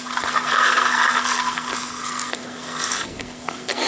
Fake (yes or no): yes